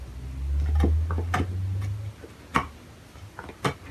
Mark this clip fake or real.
real